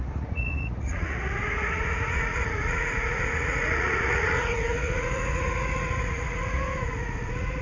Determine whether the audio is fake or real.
fake